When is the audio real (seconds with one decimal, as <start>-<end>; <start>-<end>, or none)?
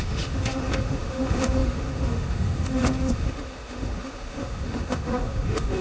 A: none